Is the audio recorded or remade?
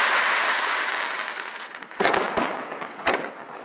remade